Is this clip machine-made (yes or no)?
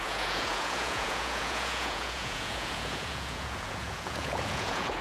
yes